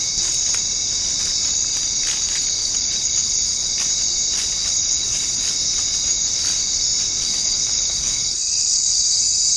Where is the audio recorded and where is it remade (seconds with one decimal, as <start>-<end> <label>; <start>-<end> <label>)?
0.0-2.6 recorded; 2.6-3.7 remade; 3.7-4.6 recorded; 4.6-5.4 remade; 5.4-7.2 recorded; 7.2-9.2 remade; 9.2-9.6 recorded